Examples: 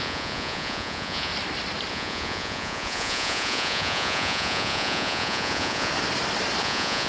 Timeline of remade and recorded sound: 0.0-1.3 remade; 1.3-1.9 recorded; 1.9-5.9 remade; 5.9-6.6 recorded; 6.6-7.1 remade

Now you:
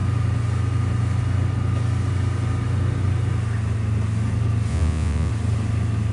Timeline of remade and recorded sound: 0.0-4.7 recorded; 4.7-5.3 remade; 5.3-6.1 recorded

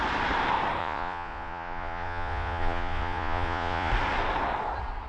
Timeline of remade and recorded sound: 0.0-0.8 recorded; 0.8-3.9 remade; 3.9-5.1 recorded